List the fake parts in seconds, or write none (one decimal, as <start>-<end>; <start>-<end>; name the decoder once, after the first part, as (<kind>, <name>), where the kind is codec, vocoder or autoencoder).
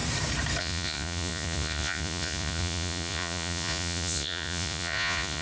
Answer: 0.6-5.4 (vocoder, Vocos)